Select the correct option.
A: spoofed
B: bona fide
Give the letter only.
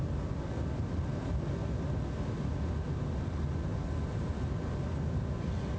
B